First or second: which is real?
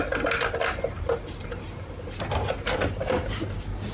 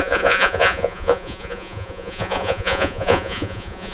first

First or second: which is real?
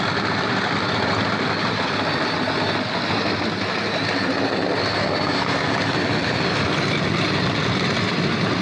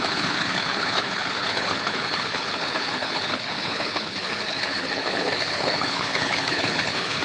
first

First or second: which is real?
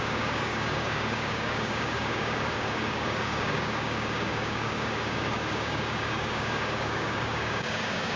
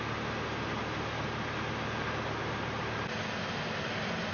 second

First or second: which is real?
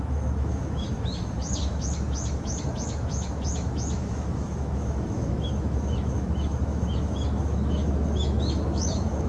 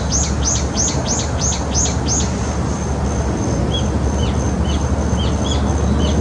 second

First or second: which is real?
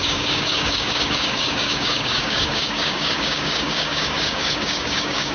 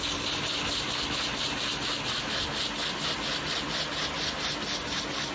second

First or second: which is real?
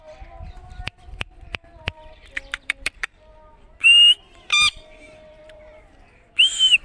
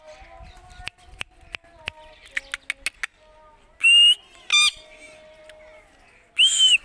second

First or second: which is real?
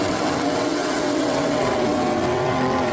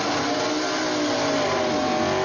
second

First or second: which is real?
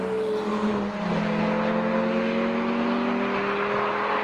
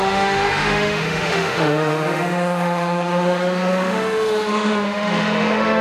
first